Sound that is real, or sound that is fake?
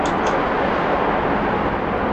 real